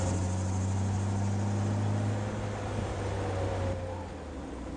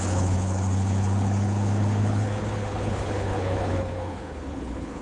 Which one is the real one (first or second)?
first